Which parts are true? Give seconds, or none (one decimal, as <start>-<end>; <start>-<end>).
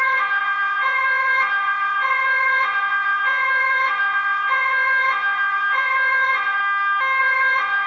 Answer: 6.6-7.2